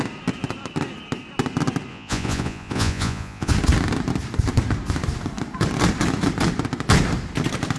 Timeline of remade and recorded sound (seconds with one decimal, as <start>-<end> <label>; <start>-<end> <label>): 0.0-1.9 recorded; 1.9-3.5 remade; 3.5-7.8 recorded